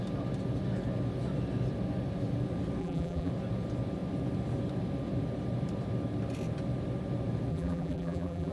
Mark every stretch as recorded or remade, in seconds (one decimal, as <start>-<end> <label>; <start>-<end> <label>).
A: 0.0-2.8 recorded; 2.8-3.3 remade; 3.3-7.5 recorded; 7.5-8.5 remade